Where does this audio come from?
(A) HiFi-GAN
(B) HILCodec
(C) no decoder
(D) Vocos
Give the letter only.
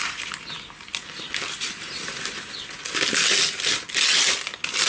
C